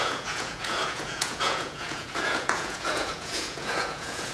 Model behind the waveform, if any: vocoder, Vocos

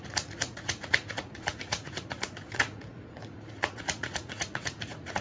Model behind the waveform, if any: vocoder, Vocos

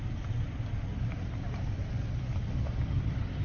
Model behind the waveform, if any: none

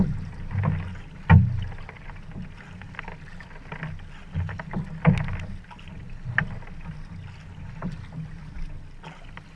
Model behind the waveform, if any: none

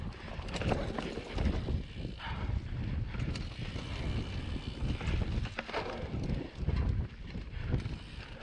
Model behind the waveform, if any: none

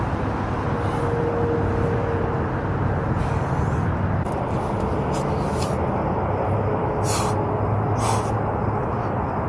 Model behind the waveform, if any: none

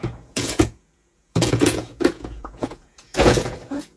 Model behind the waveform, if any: vocoder, Vocos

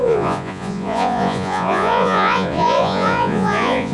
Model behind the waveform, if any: vocoder, Vocos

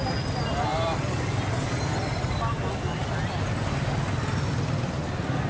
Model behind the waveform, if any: none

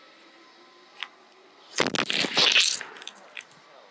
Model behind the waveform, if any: none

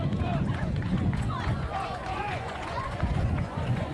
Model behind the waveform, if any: vocoder, Vocos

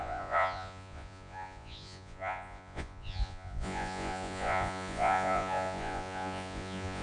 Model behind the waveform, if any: vocoder, Vocos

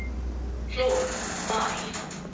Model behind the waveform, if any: none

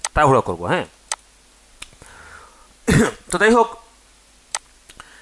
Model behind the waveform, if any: none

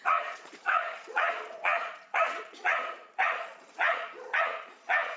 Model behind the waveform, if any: vocoder, Vocos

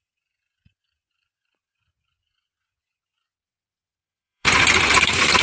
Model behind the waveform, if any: vocoder, Vocos